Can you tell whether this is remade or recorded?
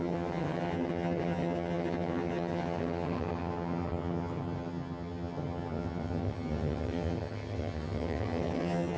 remade